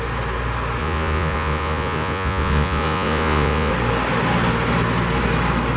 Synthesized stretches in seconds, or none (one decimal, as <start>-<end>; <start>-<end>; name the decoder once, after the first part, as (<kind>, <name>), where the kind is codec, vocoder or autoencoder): 0.8-3.7 (vocoder, Vocos)